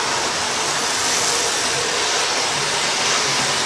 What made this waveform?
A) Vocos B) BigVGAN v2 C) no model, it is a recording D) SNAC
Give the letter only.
C